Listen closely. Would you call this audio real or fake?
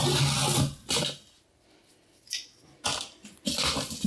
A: real